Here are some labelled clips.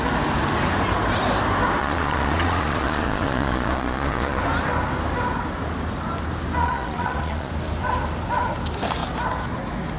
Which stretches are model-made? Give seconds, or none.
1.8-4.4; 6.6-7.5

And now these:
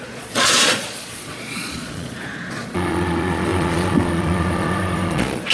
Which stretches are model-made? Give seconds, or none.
0.0-5.5

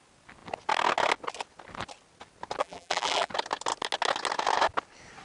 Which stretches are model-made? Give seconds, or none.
2.6-3.3

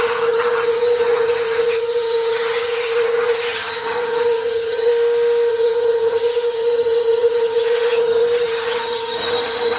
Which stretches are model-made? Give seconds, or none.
0.0-4.9; 5.5-9.8

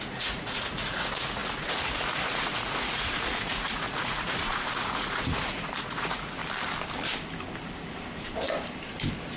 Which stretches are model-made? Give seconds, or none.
0.0-6.4

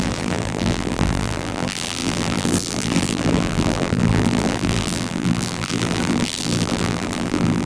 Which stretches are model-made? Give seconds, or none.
0.0-7.7